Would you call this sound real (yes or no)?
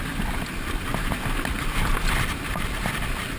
yes